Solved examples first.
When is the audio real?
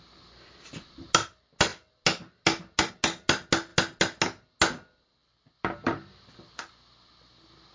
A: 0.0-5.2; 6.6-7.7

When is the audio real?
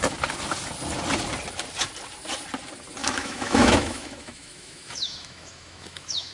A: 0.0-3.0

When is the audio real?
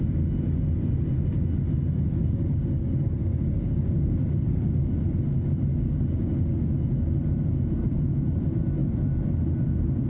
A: 0.0-2.2; 4.9-5.7; 6.5-10.1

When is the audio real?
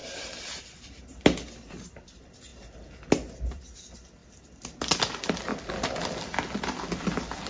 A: 1.2-7.5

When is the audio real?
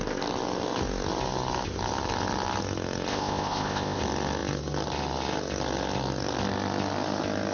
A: 0.0-3.1; 4.0-7.5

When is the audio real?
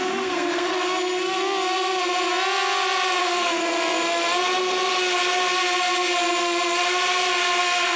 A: 0.7-3.2; 3.6-7.6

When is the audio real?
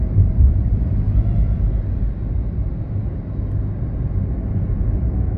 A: 0.0-0.6; 1.7-5.4